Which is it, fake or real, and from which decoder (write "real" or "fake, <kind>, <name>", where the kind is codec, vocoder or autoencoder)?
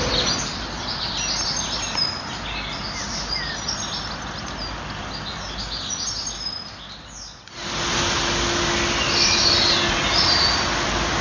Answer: real